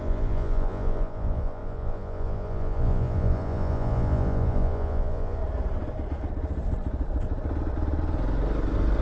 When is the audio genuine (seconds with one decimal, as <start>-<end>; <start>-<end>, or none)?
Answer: 5.4-9.0